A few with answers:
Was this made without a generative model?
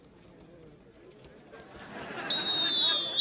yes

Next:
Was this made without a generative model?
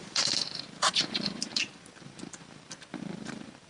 no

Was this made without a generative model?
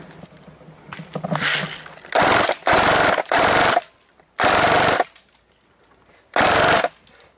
yes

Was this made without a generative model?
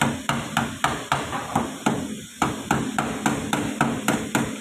yes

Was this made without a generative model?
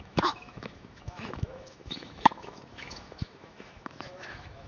no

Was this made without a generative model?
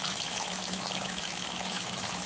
no